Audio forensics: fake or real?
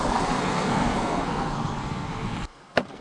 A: fake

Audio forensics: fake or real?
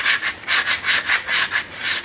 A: real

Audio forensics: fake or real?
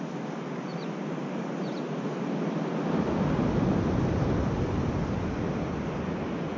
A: real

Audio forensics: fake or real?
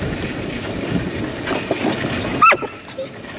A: real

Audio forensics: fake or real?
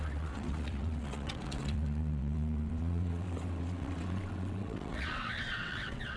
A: fake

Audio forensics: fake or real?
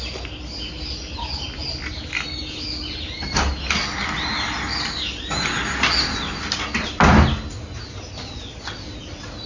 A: real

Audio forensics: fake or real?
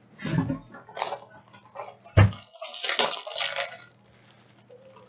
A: real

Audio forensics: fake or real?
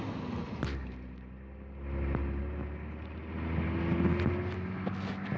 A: real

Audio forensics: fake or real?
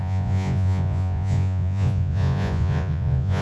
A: fake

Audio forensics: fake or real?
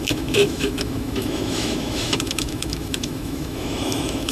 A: fake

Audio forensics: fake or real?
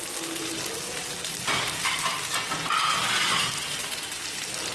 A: real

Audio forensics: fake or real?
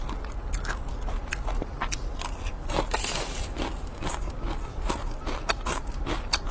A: real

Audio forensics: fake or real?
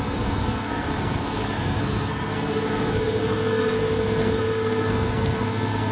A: fake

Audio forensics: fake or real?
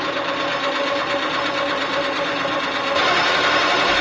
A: real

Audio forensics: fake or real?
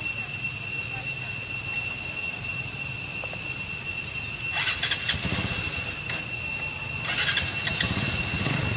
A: real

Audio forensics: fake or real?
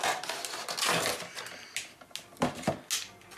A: real